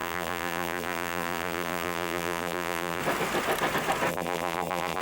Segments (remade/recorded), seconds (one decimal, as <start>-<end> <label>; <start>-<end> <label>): 0.0-3.0 remade; 3.0-4.1 recorded; 4.1-5.0 remade